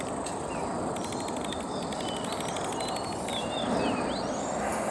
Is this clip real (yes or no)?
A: yes